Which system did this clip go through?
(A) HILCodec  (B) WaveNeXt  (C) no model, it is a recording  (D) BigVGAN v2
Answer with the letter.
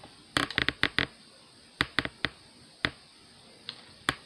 C